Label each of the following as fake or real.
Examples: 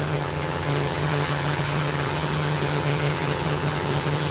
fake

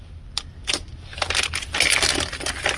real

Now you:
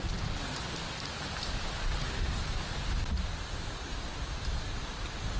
real